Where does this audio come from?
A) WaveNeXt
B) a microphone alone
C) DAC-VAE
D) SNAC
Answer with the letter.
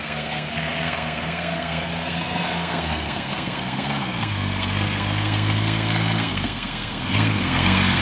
D